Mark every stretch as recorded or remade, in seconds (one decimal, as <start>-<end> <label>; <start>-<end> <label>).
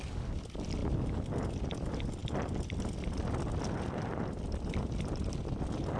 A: 0.0-6.0 recorded